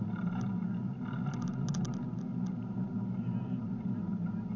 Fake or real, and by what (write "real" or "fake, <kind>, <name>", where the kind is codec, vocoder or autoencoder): real